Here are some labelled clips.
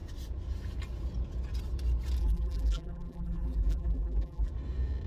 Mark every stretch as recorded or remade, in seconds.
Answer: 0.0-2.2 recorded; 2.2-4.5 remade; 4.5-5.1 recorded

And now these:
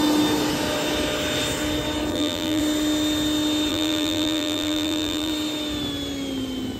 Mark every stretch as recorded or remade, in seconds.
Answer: 0.0-2.1 recorded; 2.1-2.6 remade; 2.6-3.7 recorded; 3.7-5.3 remade; 5.3-6.8 recorded

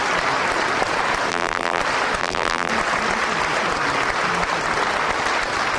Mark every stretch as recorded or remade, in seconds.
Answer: 0.0-1.3 recorded; 1.3-1.8 remade; 1.8-2.2 recorded; 2.2-2.7 remade; 2.7-5.8 recorded

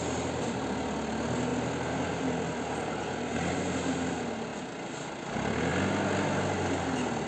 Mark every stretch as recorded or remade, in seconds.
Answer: 0.0-1.5 recorded; 1.5-4.1 remade; 4.1-7.3 recorded

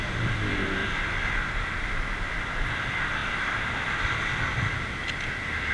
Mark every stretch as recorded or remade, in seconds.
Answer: 0.0-0.8 recorded; 0.8-2.3 remade; 2.3-3.2 recorded; 3.2-5.2 remade; 5.2-5.7 recorded

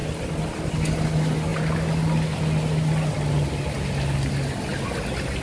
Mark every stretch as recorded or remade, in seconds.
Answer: 0.0-0.7 remade; 0.7-5.4 recorded